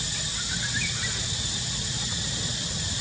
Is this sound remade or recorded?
recorded